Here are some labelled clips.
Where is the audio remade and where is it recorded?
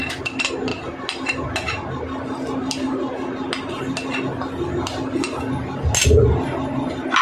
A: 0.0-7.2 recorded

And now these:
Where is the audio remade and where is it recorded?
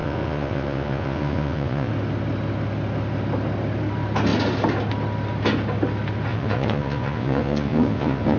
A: 0.0-1.9 remade; 1.9-6.3 recorded; 6.3-8.4 remade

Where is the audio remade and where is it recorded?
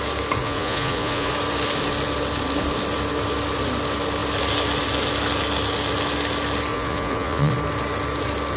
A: 0.0-0.4 recorded; 0.4-1.3 remade; 1.3-6.7 recorded; 6.7-7.5 remade; 7.5-8.6 recorded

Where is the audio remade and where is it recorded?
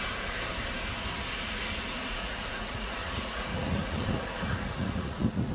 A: 0.0-2.1 recorded; 2.1-5.5 remade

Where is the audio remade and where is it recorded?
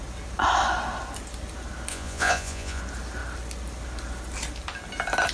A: 0.0-1.9 recorded; 1.9-2.8 remade; 2.8-5.3 recorded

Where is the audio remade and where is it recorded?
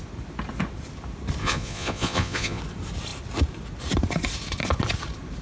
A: 0.0-1.4 recorded; 1.4-2.6 remade; 2.6-5.4 recorded